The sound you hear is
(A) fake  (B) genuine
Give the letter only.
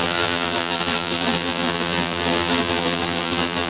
A